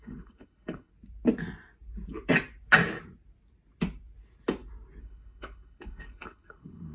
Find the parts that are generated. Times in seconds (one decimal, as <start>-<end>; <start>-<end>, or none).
0.0-0.9; 5.0-6.9